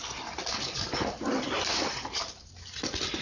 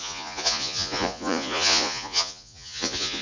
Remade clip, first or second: second